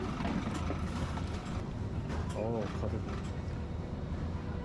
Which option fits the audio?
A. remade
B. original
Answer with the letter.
B